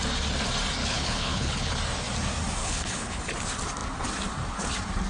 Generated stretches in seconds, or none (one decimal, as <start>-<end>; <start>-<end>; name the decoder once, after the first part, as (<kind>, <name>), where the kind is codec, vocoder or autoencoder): 0.8-1.7 (codec, HILCodec); 2.6-3.2